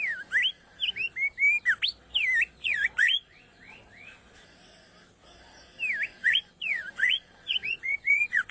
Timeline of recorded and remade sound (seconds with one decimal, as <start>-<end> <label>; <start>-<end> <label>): 0.0-2.6 recorded; 2.6-3.8 remade; 3.8-6.1 recorded; 6.1-8.5 remade